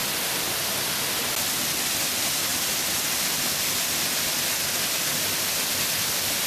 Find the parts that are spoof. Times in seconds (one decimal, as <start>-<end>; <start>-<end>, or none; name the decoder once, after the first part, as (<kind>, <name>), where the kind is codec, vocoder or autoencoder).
none